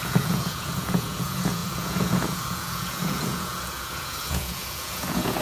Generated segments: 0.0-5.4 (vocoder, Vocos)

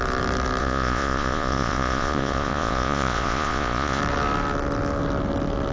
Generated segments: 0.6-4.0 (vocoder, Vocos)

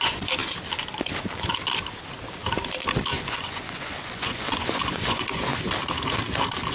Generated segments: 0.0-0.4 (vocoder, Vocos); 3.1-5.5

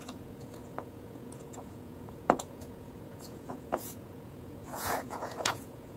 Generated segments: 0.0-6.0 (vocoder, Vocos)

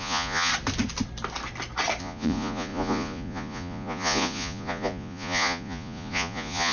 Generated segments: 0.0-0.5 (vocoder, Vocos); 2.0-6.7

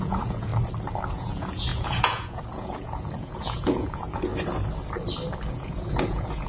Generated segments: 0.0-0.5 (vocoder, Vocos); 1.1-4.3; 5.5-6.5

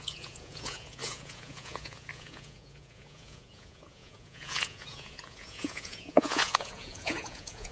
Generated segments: 0.0-7.7 (vocoder, Vocos)